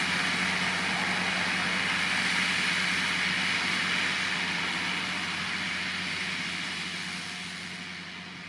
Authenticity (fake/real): real